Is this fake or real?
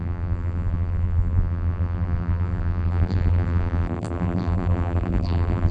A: fake